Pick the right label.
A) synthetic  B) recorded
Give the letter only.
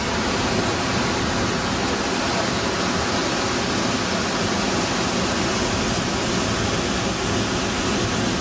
B